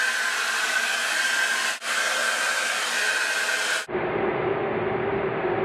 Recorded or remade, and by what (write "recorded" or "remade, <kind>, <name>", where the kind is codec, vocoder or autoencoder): recorded